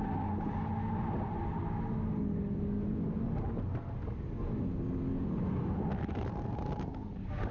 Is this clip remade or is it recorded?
recorded